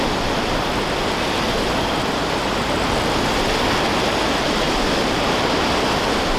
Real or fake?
real